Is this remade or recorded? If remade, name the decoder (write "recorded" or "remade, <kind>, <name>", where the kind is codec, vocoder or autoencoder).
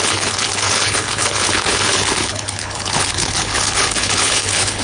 remade, codec, HILCodec